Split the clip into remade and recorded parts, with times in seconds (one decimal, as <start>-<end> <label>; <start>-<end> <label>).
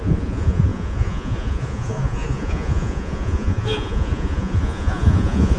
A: 0.0-5.6 remade